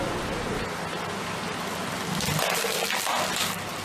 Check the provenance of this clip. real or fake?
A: real